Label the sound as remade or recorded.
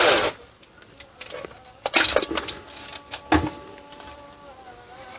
recorded